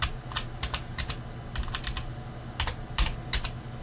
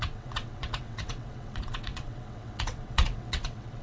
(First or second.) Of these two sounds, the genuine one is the first